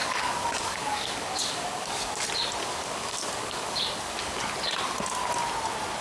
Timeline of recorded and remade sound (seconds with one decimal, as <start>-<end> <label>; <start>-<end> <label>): 0.0-2.2 remade; 2.2-2.6 recorded; 2.6-4.4 remade; 4.4-6.0 recorded